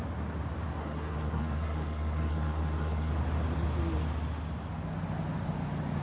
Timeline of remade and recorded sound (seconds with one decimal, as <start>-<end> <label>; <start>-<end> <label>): 0.0-0.8 recorded; 0.8-3.1 remade; 3.1-6.0 recorded